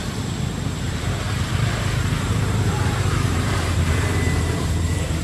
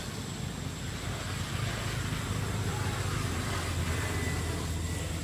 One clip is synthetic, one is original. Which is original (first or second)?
second